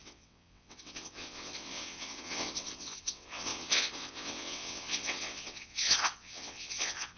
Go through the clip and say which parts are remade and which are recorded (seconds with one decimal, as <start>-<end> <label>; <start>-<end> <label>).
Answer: 0.0-7.2 remade